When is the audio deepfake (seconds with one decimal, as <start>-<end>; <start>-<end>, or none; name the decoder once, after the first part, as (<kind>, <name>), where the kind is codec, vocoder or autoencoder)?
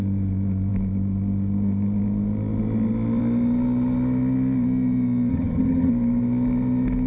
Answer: 5.3-5.9 (vocoder, HiFi-GAN)